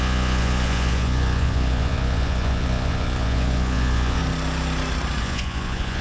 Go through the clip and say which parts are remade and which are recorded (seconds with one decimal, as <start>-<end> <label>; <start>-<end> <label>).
0.0-4.2 remade; 4.2-5.2 recorded; 5.2-6.0 remade